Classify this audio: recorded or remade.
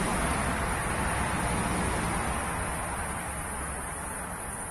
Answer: recorded